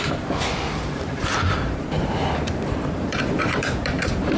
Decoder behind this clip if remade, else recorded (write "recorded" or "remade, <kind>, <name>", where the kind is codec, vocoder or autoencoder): remade, vocoder, BigVGAN v2